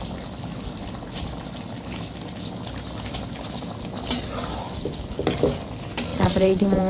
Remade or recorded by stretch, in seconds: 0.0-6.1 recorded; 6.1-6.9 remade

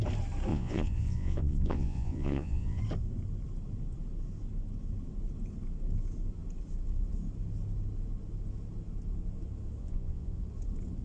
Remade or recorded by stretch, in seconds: 0.0-0.5 recorded; 0.5-2.8 remade; 2.8-9.8 recorded; 9.8-10.4 remade; 10.4-11.0 recorded

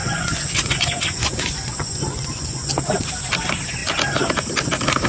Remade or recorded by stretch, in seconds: 0.0-2.7 remade; 2.7-5.1 recorded

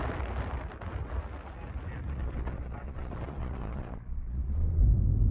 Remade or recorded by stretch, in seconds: 0.0-2.2 recorded; 2.2-4.8 remade; 4.8-5.3 recorded

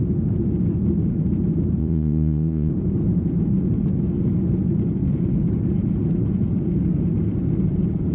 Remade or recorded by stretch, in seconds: 0.0-1.8 recorded; 1.8-2.7 remade; 2.7-8.1 recorded

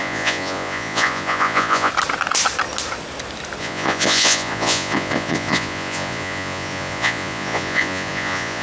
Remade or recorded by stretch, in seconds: 0.0-1.9 remade; 1.9-3.6 recorded; 3.6-8.6 remade

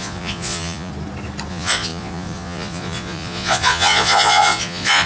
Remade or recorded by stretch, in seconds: 0.0-0.9 remade; 0.9-1.5 recorded; 1.5-5.1 remade

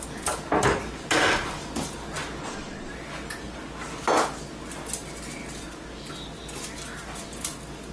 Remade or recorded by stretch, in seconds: 0.0-2.4 recorded; 2.4-2.9 remade; 2.9-7.9 recorded